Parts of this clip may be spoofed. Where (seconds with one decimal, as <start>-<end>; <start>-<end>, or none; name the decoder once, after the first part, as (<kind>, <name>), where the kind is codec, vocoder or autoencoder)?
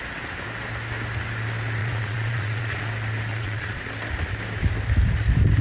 1.8-2.9 (vocoder, Vocos); 3.3-3.8